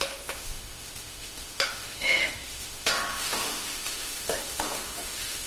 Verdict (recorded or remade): remade